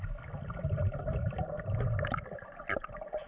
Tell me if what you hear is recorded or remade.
recorded